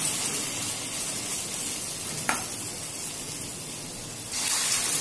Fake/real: real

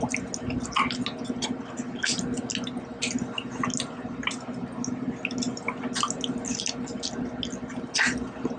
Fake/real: real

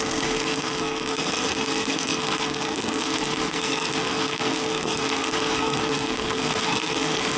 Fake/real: fake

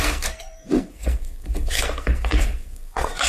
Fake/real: fake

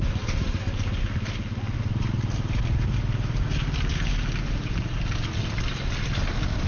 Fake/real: real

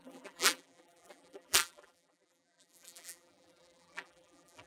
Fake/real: fake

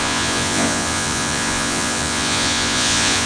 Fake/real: fake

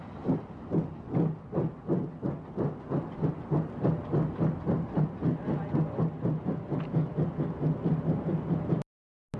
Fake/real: real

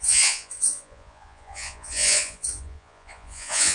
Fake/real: fake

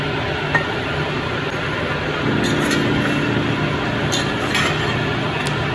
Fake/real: real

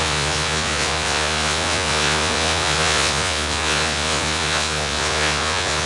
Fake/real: fake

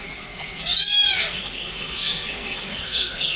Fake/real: fake